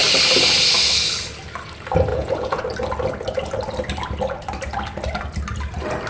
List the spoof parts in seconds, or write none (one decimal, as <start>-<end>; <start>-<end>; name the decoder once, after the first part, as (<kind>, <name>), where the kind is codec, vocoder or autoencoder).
2.1-2.6 (vocoder, Vocos)